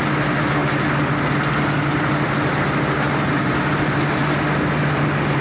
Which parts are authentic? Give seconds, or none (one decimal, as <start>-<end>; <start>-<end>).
0.0-5.4